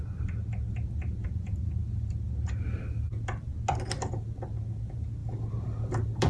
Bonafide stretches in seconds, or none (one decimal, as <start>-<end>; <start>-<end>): 0.0-1.2; 2.1-5.2